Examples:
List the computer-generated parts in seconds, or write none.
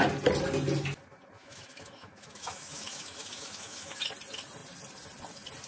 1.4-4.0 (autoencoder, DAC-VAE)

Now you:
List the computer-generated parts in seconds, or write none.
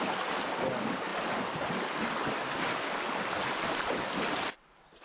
none